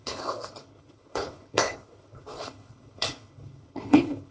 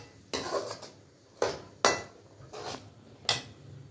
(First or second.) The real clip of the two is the second